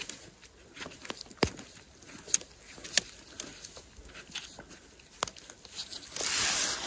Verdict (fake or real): real